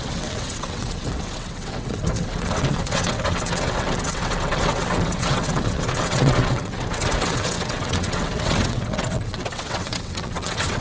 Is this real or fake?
fake